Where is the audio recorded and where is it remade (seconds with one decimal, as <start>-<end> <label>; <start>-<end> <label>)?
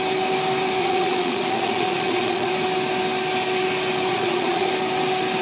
0.0-0.8 recorded; 0.8-2.5 remade; 2.5-4.1 recorded; 4.1-4.7 remade; 4.7-5.4 recorded